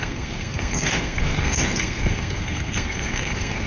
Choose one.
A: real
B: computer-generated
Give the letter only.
B